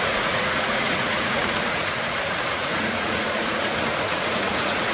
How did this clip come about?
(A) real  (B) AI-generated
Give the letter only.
B